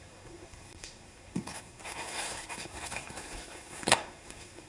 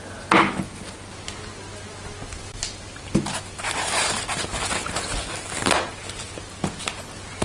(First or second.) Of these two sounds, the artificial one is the first